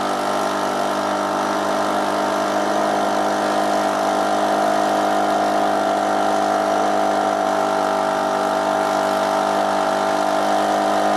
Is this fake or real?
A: real